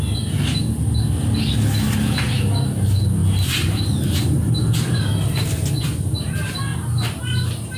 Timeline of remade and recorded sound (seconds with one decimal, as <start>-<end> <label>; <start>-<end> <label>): 0.0-3.2 recorded; 3.2-4.2 remade; 4.2-6.7 recorded; 6.7-7.2 remade; 7.2-7.8 recorded